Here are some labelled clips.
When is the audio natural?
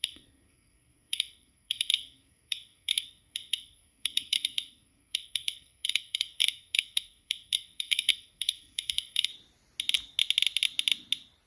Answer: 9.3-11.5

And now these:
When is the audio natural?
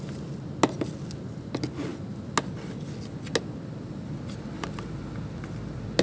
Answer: 0.0-6.0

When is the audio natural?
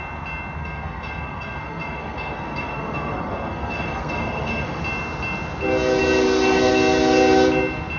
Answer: 0.0-0.6; 4.8-6.0; 6.7-8.0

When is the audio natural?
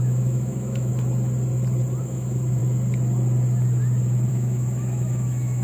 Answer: 0.9-2.0; 2.6-4.3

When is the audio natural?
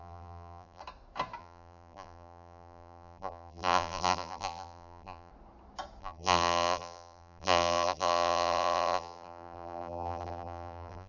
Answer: 0.8-1.4; 5.3-6.0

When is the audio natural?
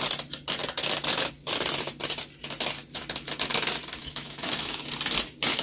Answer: 0.0-4.0; 4.8-5.6